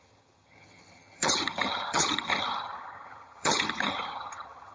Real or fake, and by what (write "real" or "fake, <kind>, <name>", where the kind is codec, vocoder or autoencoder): fake, vocoder, HiFi-GAN